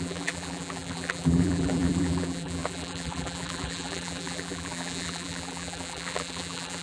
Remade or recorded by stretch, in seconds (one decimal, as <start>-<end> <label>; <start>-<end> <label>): 0.0-6.8 remade